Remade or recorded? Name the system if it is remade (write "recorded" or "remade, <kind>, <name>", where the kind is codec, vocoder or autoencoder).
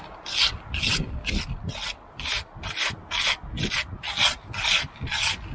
recorded